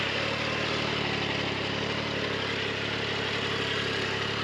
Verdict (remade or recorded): recorded